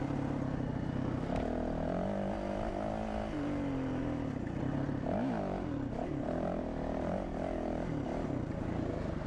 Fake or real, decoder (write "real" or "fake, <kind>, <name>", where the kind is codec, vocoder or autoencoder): real